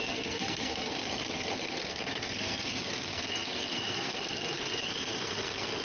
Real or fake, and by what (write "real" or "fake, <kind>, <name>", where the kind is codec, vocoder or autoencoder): fake, codec, SNAC